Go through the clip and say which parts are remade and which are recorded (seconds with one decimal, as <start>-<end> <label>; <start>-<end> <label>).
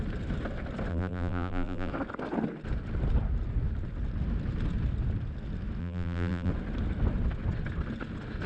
0.0-0.9 recorded; 0.9-1.9 remade; 1.9-5.8 recorded; 5.8-6.5 remade; 6.5-8.5 recorded